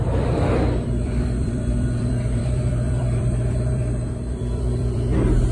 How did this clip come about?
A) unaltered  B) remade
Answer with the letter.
B